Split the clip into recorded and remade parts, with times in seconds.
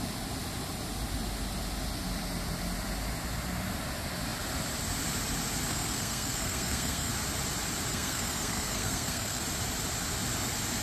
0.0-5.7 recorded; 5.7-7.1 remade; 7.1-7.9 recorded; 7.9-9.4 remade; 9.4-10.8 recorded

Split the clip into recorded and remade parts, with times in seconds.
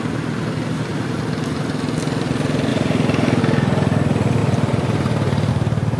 0.0-0.9 recorded; 0.9-1.6 remade; 1.6-2.7 recorded; 2.7-3.4 remade; 3.4-4.4 recorded; 4.4-5.5 remade; 5.5-6.0 recorded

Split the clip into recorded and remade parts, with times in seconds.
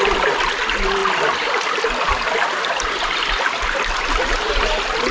0.0-5.1 recorded